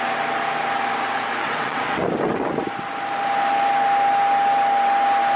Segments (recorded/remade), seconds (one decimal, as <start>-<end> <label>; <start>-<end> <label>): 0.0-1.4 recorded; 1.4-2.0 remade; 2.0-5.4 recorded